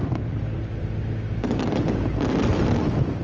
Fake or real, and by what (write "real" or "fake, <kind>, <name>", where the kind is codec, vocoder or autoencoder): real